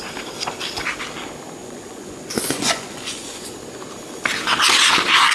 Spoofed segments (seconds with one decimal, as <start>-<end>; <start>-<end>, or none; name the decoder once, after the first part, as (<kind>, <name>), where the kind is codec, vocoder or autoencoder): 1.6-3.5 (vocoder, Vocos)

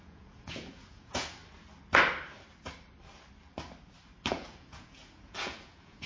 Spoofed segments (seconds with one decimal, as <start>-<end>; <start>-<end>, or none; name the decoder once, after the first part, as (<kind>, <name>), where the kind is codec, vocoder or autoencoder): 0.0-1.4 (vocoder, Vocos); 4.3-6.1

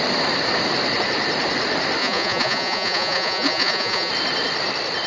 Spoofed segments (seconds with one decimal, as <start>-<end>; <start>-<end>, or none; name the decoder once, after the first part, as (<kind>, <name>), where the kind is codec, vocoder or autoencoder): 2.0-4.1 (vocoder, Vocos)

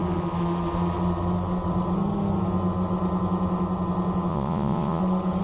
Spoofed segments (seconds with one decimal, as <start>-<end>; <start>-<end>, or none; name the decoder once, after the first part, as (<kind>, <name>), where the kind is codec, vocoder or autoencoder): 4.3-5.0 (vocoder, Vocos)

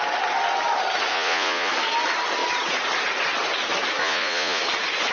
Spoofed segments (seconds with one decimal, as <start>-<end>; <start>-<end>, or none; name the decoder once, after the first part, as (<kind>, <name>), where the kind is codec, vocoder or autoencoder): 1.1-1.7 (vocoder, Vocos); 4.0-4.6

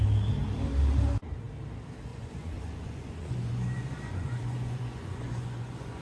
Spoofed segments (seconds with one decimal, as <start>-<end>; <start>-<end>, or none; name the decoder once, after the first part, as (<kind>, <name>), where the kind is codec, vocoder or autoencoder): 2.1-6.0 (vocoder, Vocos)

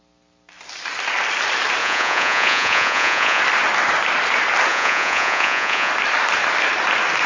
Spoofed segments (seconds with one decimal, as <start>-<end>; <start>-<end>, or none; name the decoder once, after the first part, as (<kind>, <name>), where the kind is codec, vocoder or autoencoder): 1.8-3.4 (vocoder, Vocos); 4.7-5.9

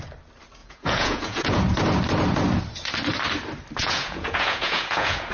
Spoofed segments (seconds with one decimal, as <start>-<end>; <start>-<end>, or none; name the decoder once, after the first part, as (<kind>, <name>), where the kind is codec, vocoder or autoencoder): 0.6-1.6 (vocoder, Vocos); 3.8-5.3